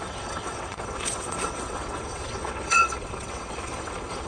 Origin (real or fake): fake